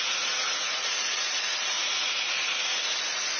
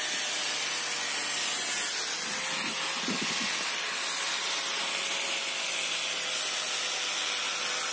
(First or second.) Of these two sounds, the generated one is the first